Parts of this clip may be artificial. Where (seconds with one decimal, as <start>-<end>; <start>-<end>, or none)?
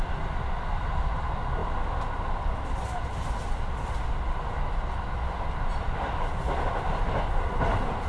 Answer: none